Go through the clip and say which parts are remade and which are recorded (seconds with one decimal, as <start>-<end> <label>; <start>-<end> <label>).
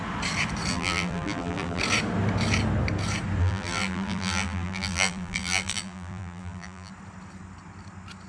0.0-0.7 recorded; 0.7-1.8 remade; 1.8-3.4 recorded; 3.4-6.9 remade; 6.9-8.3 recorded